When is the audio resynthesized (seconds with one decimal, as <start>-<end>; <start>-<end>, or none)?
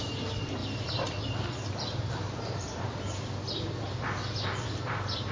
0.6-3.8